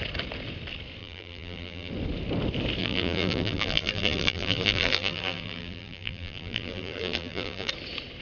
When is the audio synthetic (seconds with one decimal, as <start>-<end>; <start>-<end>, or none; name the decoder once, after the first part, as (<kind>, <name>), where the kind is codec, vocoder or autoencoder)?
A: 1.0-1.9 (vocoder, BigVGAN v2); 2.8-7.7